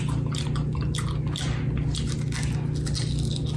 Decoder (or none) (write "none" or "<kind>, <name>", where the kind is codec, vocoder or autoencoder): none